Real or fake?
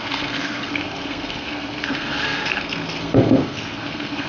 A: fake